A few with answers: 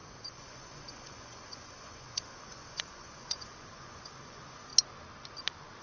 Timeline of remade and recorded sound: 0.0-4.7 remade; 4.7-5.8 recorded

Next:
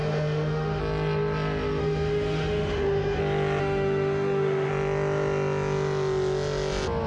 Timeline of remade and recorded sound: 0.0-0.8 remade; 0.8-1.8 recorded; 1.8-3.2 remade; 3.2-3.6 recorded; 3.6-4.7 remade; 4.7-7.1 recorded